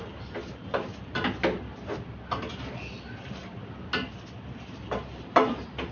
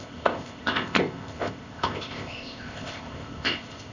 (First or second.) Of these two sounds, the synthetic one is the second